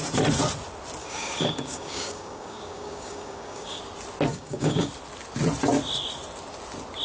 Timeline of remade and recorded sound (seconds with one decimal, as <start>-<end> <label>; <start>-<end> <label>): 0.0-1.0 recorded; 1.0-3.8 remade; 3.8-4.3 recorded; 4.3-4.9 remade; 4.9-7.0 recorded